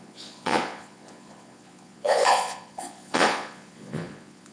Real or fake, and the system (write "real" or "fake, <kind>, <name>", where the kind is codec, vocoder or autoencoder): fake, vocoder, Vocos